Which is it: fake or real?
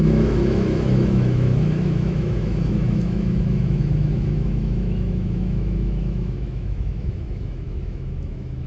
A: fake